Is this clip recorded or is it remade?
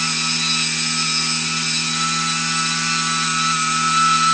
recorded